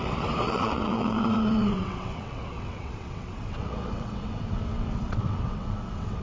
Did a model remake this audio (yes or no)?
yes